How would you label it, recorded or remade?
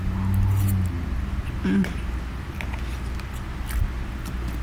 recorded